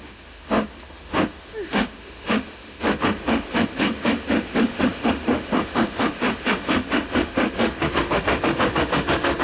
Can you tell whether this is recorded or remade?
remade